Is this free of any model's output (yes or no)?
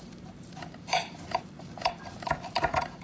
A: no